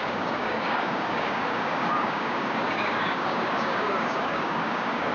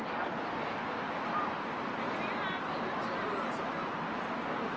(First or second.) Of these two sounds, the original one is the second